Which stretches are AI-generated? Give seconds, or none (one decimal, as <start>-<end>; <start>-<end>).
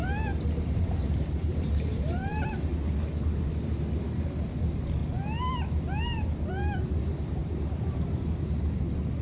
0.0-2.7; 7.4-8.4